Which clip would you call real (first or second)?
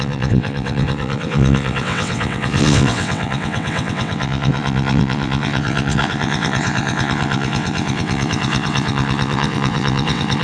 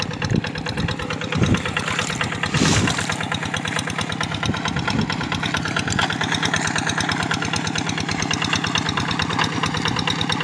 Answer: second